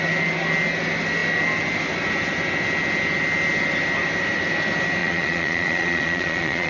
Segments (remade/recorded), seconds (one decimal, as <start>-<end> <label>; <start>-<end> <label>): 0.0-5.0 recorded; 5.0-6.7 remade